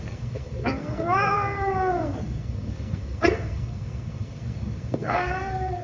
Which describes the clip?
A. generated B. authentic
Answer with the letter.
A